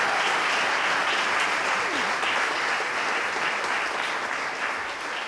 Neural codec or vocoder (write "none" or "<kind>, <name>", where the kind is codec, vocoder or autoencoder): none